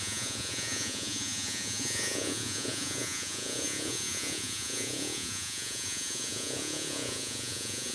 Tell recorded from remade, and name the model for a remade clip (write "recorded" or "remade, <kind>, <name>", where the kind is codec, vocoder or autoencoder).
remade, vocoder, Vocos